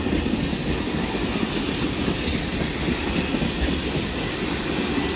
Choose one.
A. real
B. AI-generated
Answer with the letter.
A